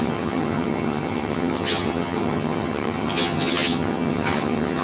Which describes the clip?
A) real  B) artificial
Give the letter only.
B